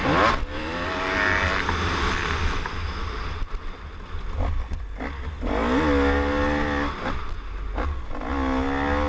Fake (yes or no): no